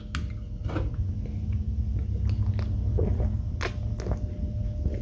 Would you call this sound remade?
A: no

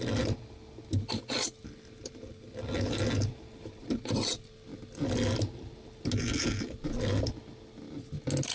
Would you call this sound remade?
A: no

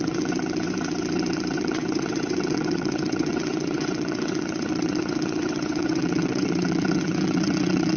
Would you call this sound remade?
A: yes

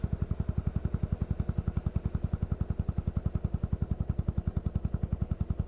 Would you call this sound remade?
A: no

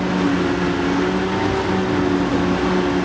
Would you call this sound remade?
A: no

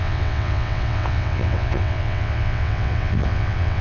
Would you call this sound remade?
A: yes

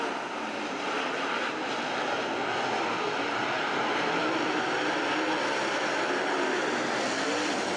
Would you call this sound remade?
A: no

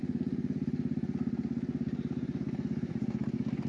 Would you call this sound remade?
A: no